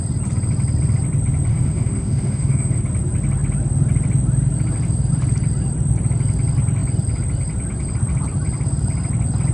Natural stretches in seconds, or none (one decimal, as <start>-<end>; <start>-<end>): 0.0-1.5; 2.8-9.5